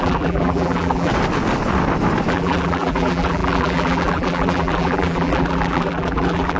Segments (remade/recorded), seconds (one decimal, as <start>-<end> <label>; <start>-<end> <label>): 0.0-1.1 remade; 1.1-2.3 recorded; 2.3-6.6 remade